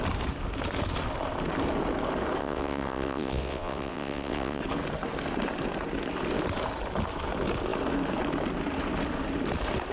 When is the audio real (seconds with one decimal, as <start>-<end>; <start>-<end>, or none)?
0.0-2.4; 4.6-9.9